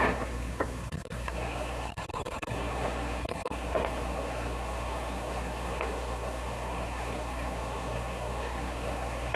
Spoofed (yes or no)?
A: yes